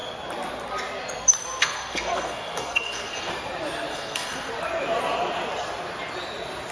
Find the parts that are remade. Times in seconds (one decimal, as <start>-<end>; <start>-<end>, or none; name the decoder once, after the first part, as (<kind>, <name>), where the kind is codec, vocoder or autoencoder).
1.6-3.3 (codec, SNAC); 3.9-4.5